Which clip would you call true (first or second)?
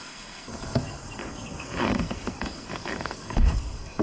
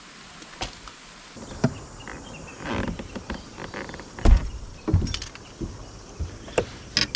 second